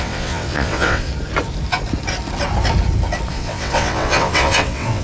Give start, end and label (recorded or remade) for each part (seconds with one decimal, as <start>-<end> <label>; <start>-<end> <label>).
0.0-1.1 remade; 1.1-3.3 recorded; 3.3-5.0 remade